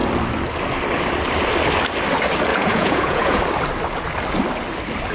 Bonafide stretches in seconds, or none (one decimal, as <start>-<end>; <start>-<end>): 0.0-2.5; 3.4-5.1